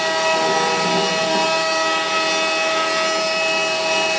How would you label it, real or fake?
real